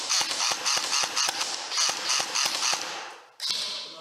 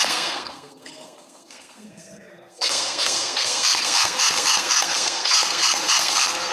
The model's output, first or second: second